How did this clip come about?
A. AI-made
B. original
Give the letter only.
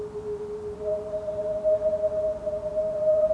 B